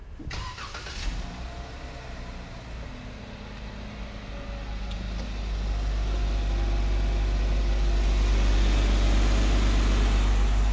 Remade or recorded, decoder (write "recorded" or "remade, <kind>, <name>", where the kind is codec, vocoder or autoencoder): recorded